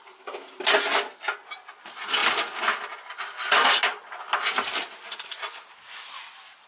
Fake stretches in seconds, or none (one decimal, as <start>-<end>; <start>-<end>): none